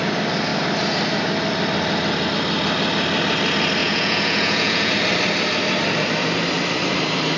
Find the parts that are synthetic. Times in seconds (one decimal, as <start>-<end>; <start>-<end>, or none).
3.8-4.9